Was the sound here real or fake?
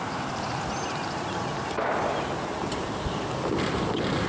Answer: real